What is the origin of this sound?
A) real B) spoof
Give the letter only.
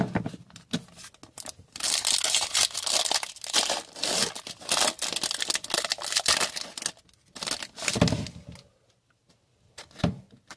A